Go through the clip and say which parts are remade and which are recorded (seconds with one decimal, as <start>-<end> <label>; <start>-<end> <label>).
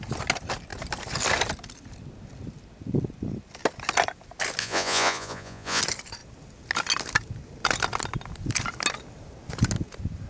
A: 0.0-4.6 recorded; 4.6-5.8 remade; 5.8-10.3 recorded